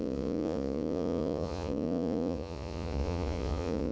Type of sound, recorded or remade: remade